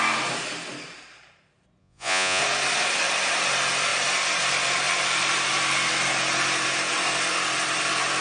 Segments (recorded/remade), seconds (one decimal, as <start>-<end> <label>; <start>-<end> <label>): 0.0-1.8 recorded; 1.8-2.4 remade; 2.4-8.2 recorded